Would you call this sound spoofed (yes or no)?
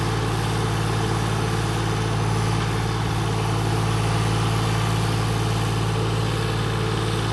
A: no